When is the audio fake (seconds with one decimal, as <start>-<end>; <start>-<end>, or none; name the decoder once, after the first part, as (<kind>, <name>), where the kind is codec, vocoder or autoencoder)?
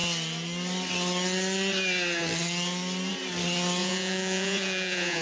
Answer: 3.8-5.2 (vocoder, Vocos)